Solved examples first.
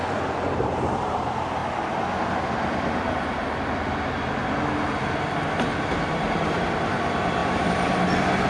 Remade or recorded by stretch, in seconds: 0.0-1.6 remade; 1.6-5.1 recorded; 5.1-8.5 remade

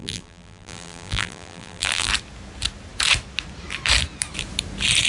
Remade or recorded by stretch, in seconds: 0.0-2.1 remade; 2.1-5.1 recorded

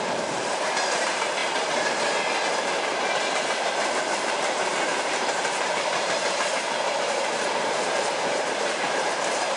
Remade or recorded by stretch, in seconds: 0.0-2.9 remade; 2.9-3.4 recorded; 3.4-9.6 remade

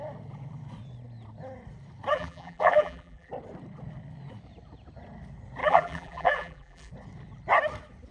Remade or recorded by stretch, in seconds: 0.0-2.1 recorded; 2.1-3.3 remade; 3.3-5.6 recorded; 5.6-6.9 remade; 6.9-8.1 recorded

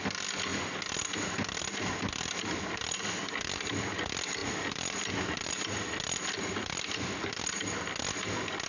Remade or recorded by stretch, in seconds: 0.0-4.4 recorded; 4.4-5.5 remade; 5.5-6.6 recorded; 6.6-7.4 remade; 7.4-8.7 recorded